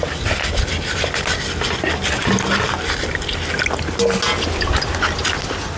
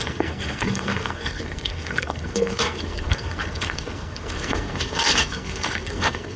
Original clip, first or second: first